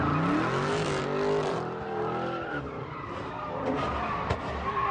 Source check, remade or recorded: recorded